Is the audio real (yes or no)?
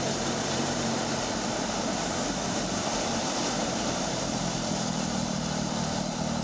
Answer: no